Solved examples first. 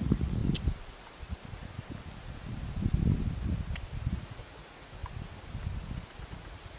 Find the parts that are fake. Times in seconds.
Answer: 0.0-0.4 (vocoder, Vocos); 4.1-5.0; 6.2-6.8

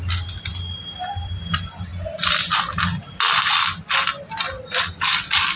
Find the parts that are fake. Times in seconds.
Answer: none

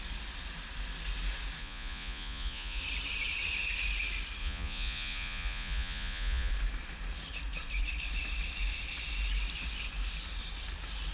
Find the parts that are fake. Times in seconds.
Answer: 1.6-2.8 (vocoder, Vocos); 4.4-6.5

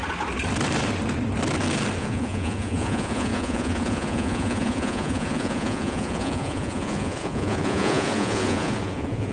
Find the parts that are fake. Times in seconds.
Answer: 2.0-9.3 (vocoder, Vocos)